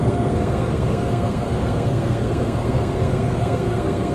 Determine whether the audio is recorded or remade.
remade